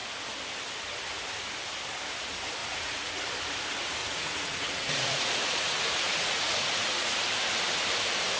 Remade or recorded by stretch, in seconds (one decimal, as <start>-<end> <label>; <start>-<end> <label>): 0.0-2.6 recorded; 2.6-3.2 remade; 3.2-4.0 recorded; 4.0-7.2 remade; 7.2-8.4 recorded